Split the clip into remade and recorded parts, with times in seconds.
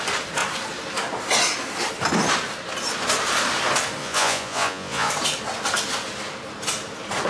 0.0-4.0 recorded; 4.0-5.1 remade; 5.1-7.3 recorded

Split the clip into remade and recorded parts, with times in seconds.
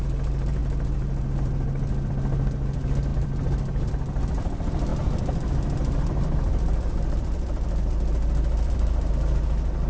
0.0-3.1 recorded; 3.1-3.9 remade; 3.9-4.9 recorded; 4.9-9.1 remade; 9.1-9.9 recorded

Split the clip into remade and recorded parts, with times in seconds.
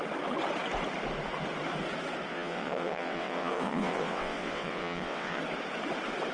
0.0-2.3 recorded; 2.3-5.4 remade; 5.4-6.3 recorded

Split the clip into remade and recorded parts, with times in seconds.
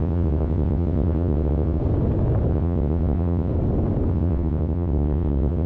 0.0-1.8 remade; 1.8-2.5 recorded; 2.5-3.5 remade; 3.5-4.1 recorded; 4.1-5.7 remade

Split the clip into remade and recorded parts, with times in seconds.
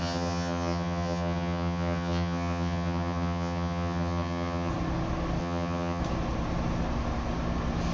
0.0-4.7 remade; 4.7-5.4 recorded; 5.4-6.0 remade; 6.0-7.9 recorded